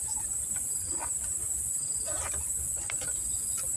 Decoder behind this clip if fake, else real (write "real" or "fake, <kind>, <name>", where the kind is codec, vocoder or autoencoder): real